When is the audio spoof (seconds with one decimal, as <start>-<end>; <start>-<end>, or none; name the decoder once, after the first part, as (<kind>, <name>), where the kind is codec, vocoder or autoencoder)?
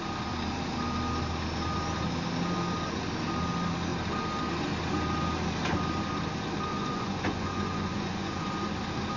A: 6.7-8.5 (vocoder, Vocos)